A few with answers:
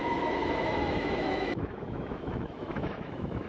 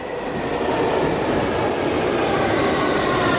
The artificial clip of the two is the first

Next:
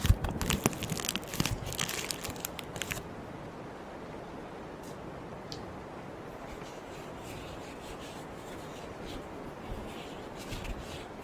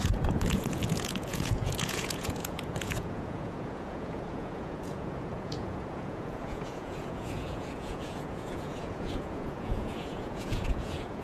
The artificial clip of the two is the second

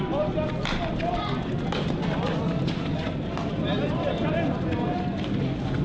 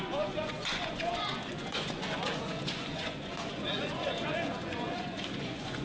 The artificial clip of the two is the second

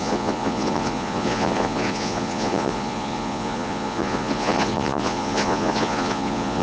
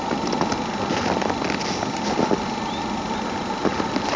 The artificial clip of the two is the first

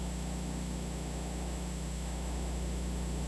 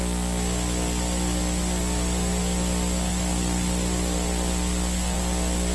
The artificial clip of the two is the first